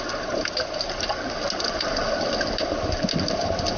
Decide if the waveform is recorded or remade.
recorded